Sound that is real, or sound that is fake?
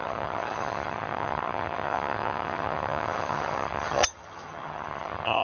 fake